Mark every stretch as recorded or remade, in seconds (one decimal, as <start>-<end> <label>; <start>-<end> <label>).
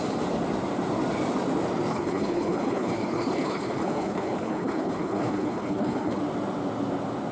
0.0-1.9 recorded; 1.9-6.2 remade; 6.2-7.3 recorded